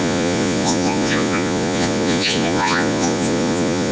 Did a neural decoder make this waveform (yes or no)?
yes